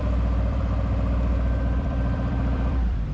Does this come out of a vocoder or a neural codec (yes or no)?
yes